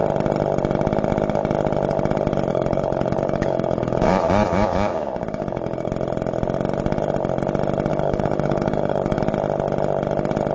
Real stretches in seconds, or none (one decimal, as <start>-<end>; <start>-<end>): 0.0-2.5; 5.9-7.9; 9.2-10.5